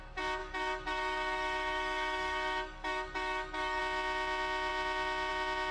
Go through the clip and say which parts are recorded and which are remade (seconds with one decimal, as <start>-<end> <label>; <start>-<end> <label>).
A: 0.0-0.4 recorded; 0.4-3.8 remade; 3.8-5.7 recorded